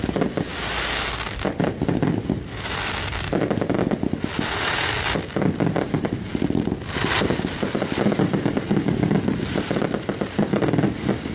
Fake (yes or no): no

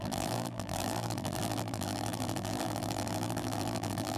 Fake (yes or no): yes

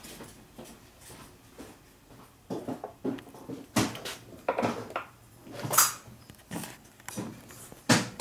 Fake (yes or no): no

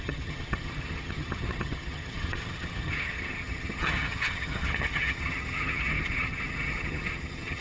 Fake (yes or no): yes